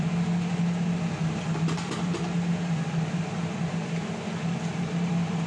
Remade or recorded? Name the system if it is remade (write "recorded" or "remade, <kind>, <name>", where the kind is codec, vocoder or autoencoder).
recorded